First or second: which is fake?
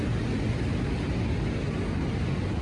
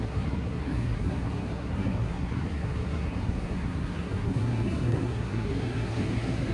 second